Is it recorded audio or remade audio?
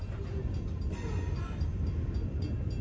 recorded